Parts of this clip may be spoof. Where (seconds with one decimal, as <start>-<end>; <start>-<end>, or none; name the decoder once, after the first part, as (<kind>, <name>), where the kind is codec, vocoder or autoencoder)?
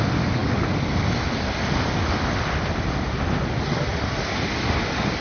none